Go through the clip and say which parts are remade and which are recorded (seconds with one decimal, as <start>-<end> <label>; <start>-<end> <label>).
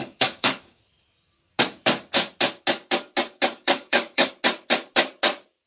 0.0-0.8 remade; 0.8-3.5 recorded; 3.5-4.3 remade; 4.3-5.7 recorded